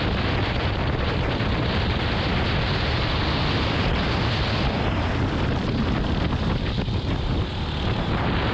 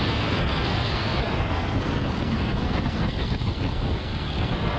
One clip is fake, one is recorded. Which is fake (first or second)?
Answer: second